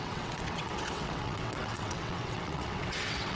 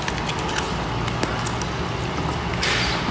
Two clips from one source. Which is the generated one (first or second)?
first